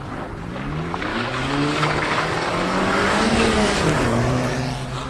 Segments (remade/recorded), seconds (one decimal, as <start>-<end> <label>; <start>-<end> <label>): 0.0-1.1 recorded; 1.1-4.2 remade; 4.2-5.1 recorded